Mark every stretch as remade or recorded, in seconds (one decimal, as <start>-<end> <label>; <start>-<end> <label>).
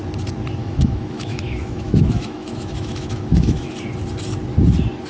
0.0-0.6 recorded; 0.6-3.7 remade; 3.7-5.1 recorded